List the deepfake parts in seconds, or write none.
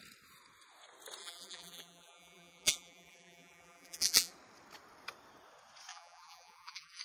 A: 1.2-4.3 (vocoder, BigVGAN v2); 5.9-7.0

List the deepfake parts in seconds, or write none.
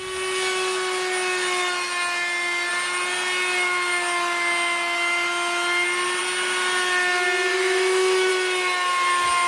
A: 7.5-8.3 (autoencoder, DAC-VAE)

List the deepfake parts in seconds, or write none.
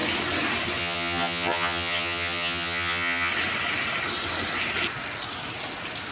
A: 0.8-3.3 (vocoder, HiFi-GAN)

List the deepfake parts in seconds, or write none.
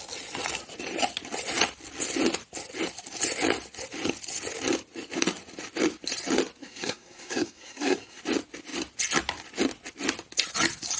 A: 6.6-8.2 (codec, SNAC)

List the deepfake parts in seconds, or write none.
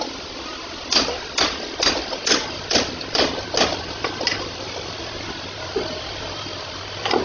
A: none